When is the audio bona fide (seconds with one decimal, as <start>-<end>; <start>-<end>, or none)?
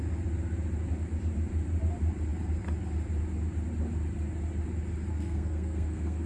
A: 0.0-5.1